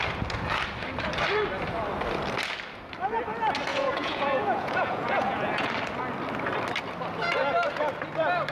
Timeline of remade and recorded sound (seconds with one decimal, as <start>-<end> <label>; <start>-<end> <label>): 0.0-3.7 recorded; 3.7-5.7 remade; 5.7-8.5 recorded